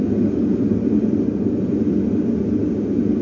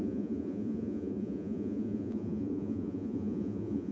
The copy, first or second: second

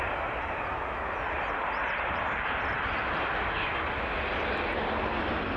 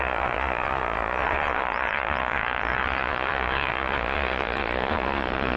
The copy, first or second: second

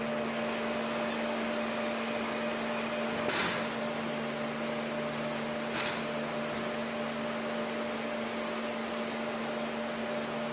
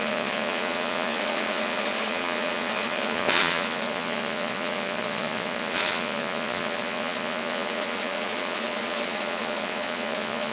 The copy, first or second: second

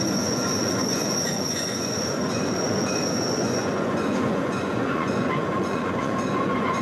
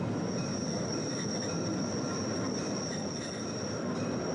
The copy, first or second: first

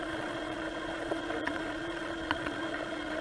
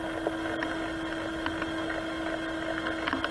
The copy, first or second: first